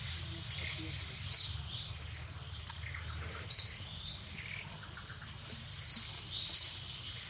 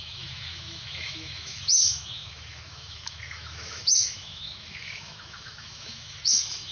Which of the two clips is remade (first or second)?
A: second